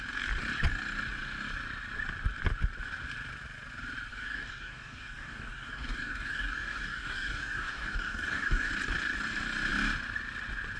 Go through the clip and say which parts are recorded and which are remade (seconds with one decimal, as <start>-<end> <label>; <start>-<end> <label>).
0.0-4.1 recorded; 4.1-8.7 remade; 8.7-10.8 recorded